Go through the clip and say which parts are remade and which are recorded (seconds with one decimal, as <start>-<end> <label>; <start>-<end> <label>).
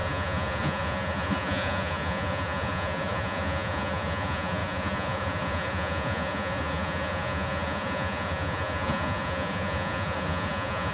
0.0-10.9 remade